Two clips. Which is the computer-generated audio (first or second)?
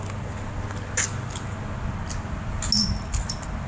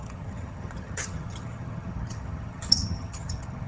second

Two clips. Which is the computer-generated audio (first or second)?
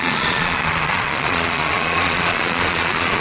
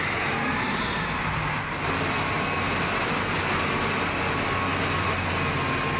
first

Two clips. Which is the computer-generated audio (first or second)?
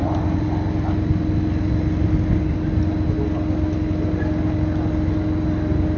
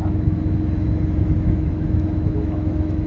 second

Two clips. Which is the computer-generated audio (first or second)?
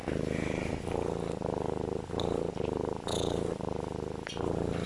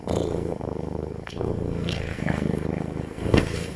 second